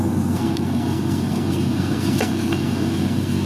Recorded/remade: remade